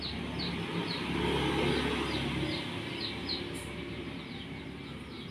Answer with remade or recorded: recorded